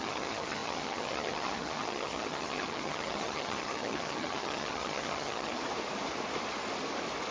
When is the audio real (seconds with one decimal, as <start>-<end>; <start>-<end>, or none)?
5.6-7.3